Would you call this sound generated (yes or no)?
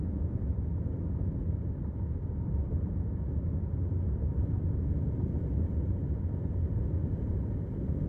no